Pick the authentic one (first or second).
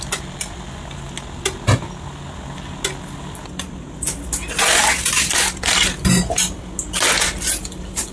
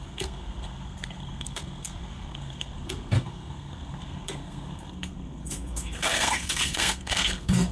first